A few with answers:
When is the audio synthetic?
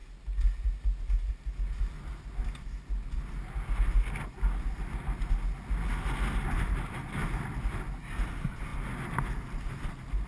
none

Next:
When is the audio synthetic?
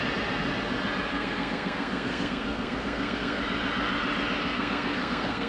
1.1-3.4 (codec, SNAC); 4.4-5.5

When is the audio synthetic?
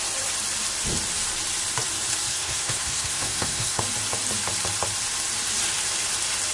2.3-3.8 (codec, SNAC)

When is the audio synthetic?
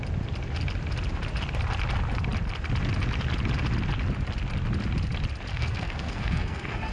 5.5-6.9 (codec, SNAC)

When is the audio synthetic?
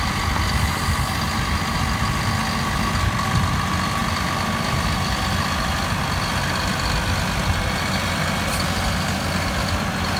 none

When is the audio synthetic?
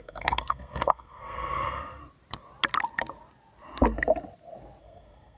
0.0-2.0 (codec, SNAC); 4.8-5.4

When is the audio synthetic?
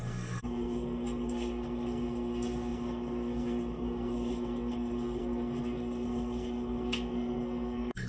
0.0-8.1 (codec, SNAC)